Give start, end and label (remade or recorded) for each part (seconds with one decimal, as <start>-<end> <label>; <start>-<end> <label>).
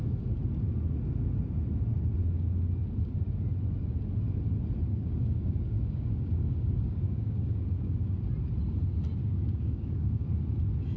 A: 0.0-4.9 recorded; 4.9-8.3 remade; 8.3-9.2 recorded; 9.2-10.3 remade; 10.3-11.0 recorded